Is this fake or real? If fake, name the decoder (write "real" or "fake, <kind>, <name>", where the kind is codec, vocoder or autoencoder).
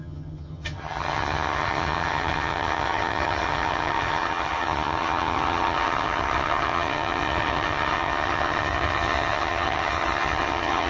fake, vocoder, HiFi-GAN